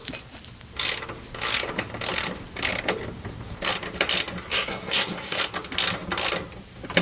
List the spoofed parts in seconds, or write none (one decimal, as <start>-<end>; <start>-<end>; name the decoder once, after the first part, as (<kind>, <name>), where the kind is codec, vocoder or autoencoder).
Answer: 4.5-5.4 (codec, SNAC)